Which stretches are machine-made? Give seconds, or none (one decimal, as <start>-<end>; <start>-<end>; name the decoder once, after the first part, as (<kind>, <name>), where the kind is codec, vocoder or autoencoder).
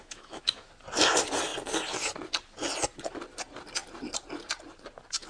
0.0-0.7 (autoencoder, DAC-VAE)